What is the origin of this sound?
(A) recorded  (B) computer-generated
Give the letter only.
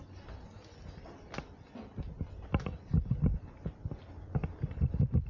A